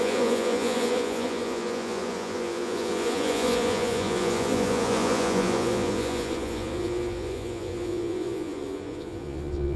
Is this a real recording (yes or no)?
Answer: no